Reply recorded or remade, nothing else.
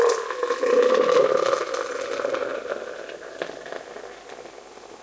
recorded